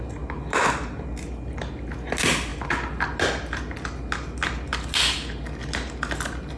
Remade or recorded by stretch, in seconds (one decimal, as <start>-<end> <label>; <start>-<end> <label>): 0.0-6.6 recorded